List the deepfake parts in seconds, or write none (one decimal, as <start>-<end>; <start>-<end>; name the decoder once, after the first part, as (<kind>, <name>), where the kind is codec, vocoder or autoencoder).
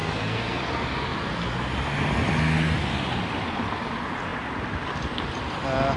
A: 0.0-0.6 (codec, SNAC)